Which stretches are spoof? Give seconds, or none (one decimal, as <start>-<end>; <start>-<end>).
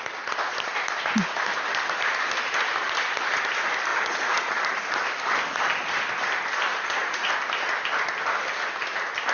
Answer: 3.9-4.5; 6.7-7.3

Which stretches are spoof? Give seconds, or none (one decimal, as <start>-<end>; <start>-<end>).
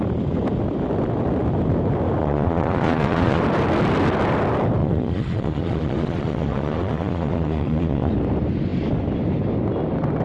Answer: 2.2-3.4; 4.8-8.1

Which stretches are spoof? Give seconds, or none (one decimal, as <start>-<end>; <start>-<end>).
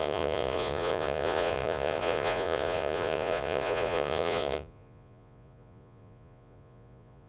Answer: 0.0-7.3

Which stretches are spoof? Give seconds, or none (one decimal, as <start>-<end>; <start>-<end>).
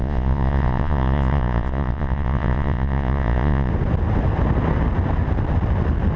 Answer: 0.0-3.7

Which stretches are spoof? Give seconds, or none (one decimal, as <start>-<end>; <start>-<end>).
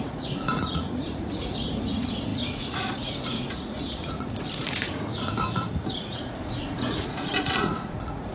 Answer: 0.0-8.3